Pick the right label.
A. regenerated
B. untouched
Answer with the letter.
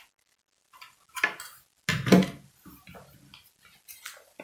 B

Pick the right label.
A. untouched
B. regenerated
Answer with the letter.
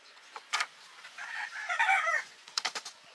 B